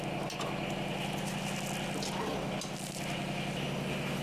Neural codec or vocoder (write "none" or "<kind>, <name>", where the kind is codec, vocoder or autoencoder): none